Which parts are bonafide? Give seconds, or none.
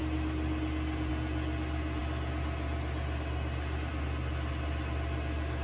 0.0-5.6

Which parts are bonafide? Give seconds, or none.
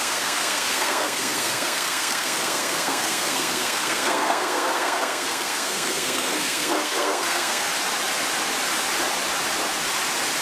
7.7-10.4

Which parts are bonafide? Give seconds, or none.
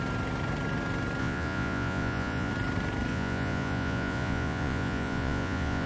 0.0-1.2; 2.5-3.1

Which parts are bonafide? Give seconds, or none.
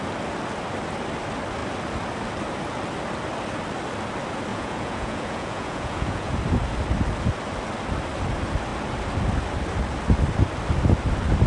0.0-4.5; 6.3-11.5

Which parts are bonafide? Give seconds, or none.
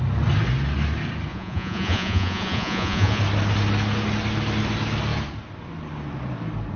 0.0-1.3; 3.2-6.8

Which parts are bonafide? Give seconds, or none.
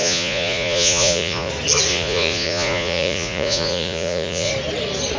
1.5-1.9; 4.5-5.2